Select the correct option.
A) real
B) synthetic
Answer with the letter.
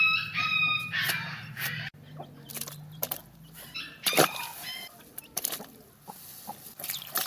A